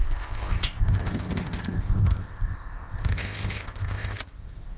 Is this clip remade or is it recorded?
remade